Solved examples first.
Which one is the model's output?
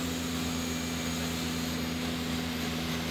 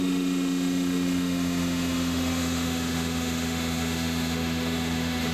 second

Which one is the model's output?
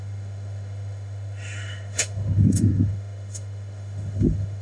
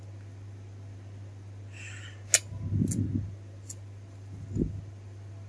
first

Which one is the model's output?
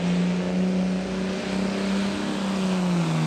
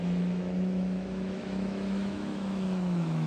second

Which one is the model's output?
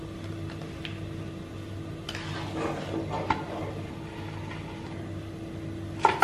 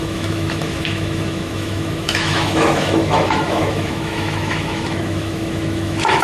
second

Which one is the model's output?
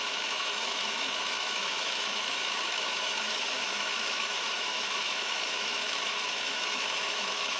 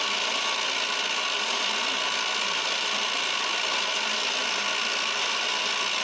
first